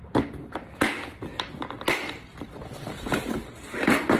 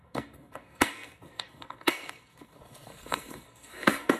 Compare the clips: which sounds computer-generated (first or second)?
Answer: second